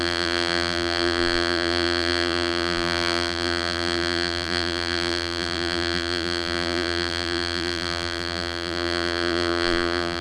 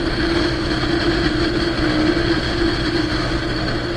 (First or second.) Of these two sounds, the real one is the second